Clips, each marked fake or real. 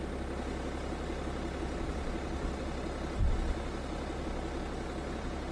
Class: real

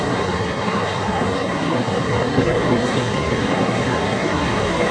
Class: fake